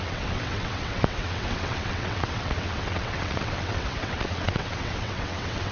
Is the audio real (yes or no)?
no